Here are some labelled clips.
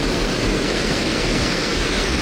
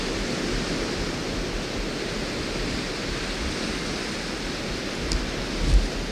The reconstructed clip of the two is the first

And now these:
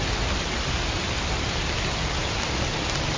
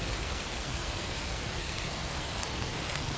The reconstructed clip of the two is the second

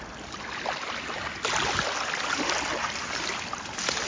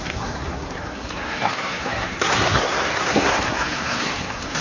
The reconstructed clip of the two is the second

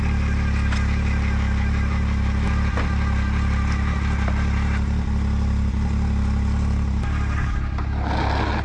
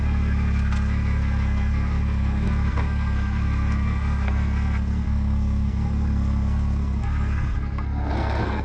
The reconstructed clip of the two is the second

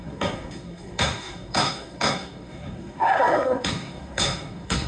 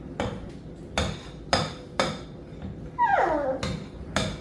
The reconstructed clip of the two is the first